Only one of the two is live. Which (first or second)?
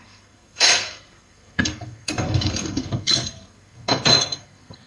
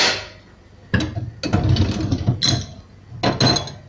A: second